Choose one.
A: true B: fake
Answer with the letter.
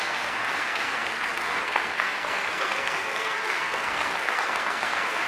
B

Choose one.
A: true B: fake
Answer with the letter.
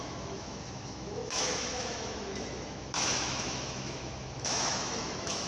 B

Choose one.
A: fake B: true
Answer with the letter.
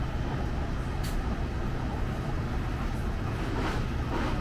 B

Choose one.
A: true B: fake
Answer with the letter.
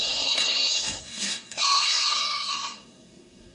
B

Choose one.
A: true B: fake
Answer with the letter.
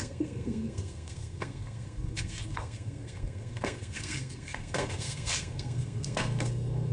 B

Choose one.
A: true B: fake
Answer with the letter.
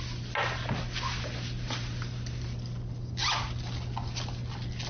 A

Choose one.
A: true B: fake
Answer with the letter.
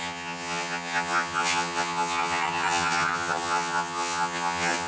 B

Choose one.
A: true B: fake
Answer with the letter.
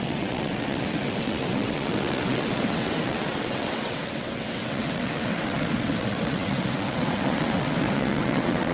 B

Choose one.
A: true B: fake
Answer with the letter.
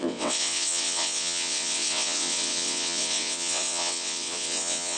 B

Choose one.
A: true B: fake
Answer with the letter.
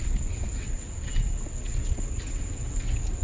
B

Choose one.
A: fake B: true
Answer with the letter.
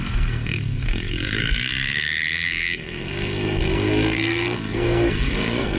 A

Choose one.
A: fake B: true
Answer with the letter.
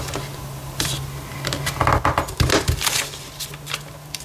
B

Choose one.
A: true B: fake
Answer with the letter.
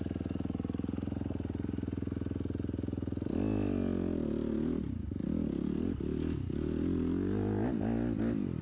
A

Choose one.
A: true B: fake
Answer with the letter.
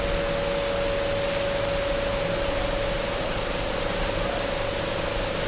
A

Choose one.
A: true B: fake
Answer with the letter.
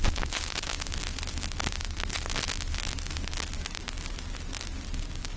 A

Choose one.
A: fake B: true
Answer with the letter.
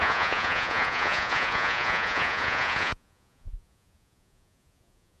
A